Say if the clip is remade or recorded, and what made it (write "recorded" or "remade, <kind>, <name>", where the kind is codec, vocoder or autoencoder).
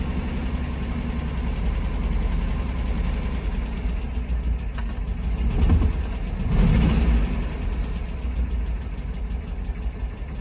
recorded